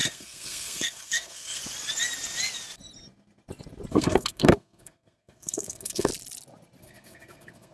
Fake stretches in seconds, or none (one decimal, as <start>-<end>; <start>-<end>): 0.0-1.6; 3.9-6.1; 6.8-7.7